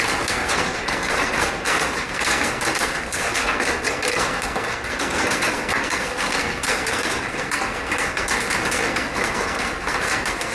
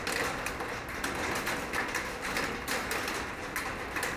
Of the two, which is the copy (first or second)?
first